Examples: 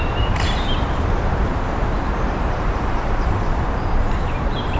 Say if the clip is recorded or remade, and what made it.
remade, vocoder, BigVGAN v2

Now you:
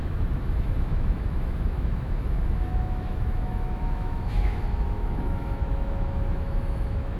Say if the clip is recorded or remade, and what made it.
remade, autoencoder, DAC-VAE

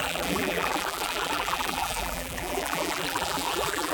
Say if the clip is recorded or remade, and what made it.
remade, vocoder, BigVGAN v2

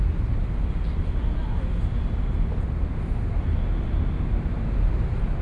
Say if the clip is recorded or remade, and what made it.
recorded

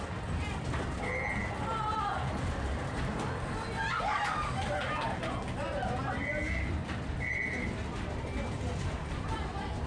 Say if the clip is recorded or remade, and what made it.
recorded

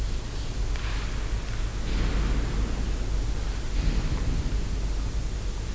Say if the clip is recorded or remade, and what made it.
recorded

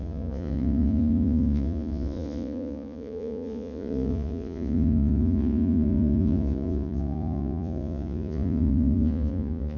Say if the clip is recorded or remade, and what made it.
remade, vocoder, Vocos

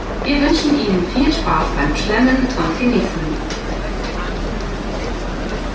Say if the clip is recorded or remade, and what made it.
recorded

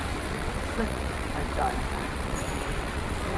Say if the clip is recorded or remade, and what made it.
remade, vocoder, WaveNeXt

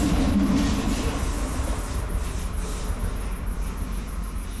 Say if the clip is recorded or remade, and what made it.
recorded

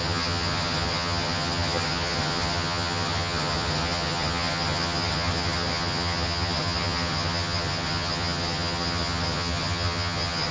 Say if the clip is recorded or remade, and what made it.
remade, vocoder, HiFi-GAN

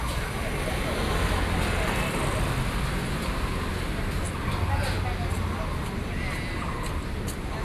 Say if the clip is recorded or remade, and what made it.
recorded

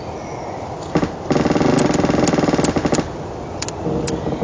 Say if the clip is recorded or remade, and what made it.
recorded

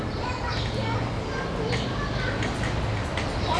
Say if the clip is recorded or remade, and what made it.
recorded